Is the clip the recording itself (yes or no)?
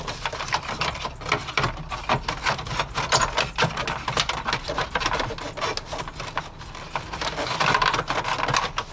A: yes